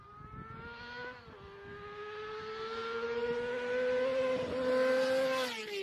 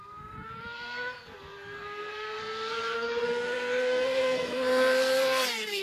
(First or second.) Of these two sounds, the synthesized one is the second